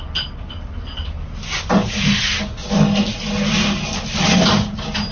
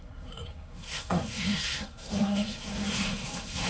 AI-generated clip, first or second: second